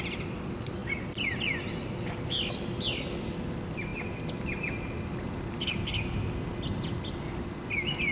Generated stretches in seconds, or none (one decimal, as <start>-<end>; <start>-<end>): none